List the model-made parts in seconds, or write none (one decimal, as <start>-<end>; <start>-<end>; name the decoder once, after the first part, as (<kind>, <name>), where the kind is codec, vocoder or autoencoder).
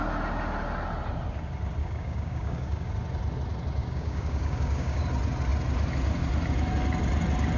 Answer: 1.8-2.9 (codec, DAC); 3.8-5.0